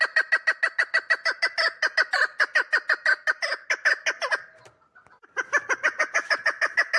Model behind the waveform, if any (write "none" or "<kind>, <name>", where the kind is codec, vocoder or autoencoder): none